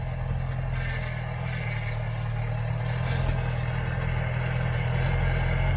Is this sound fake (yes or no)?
no